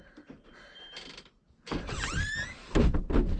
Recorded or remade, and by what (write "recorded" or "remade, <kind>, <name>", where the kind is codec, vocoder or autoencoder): recorded